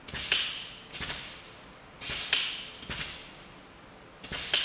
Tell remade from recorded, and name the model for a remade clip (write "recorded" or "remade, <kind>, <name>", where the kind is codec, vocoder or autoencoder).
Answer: recorded